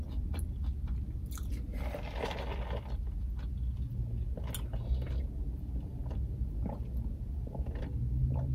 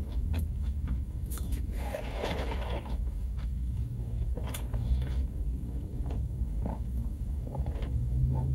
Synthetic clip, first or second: second